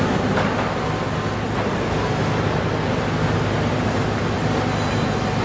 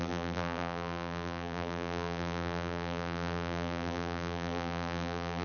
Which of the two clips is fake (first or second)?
second